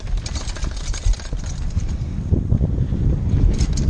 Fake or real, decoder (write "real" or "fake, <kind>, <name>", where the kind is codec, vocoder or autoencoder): fake, vocoder, BigVGAN v2